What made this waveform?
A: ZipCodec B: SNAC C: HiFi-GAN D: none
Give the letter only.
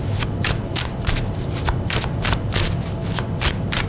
D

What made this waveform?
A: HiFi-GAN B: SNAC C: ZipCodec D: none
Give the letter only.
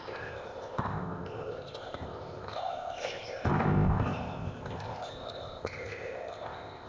C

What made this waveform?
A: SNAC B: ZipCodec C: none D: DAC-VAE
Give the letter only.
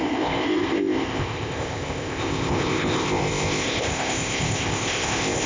B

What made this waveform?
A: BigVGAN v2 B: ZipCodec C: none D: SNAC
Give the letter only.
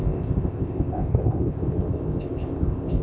B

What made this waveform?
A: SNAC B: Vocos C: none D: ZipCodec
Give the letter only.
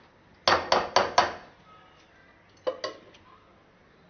C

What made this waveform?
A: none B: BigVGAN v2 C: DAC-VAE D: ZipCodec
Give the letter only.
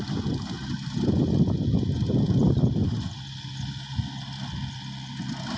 A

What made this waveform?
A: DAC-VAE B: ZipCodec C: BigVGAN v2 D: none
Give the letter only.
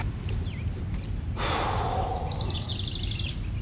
D